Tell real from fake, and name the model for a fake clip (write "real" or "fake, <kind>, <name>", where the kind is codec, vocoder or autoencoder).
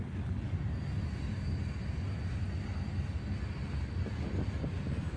real